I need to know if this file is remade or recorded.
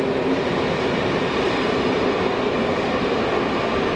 recorded